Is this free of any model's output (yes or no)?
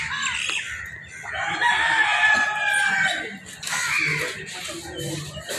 yes